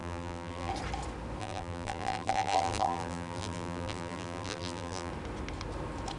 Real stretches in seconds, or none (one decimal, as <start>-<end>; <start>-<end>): 0.7-1.4; 5.1-6.2

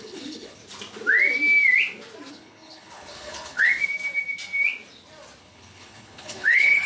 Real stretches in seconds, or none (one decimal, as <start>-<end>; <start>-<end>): 0.6-2.3; 3.7-5.4

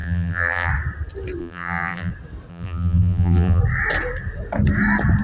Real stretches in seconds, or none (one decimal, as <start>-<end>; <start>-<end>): 0.7-1.4; 2.1-2.5; 3.6-5.2